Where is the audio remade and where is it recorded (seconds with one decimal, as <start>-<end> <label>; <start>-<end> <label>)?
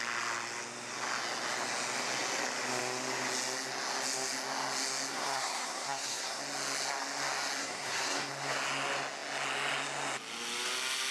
0.0-5.1 recorded; 5.1-6.4 remade; 6.4-7.6 recorded; 7.6-8.3 remade; 8.3-11.1 recorded